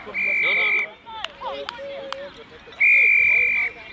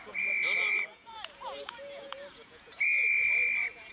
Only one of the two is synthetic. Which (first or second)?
second